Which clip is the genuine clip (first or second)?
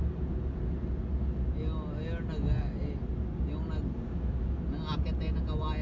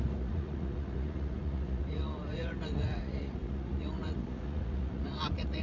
first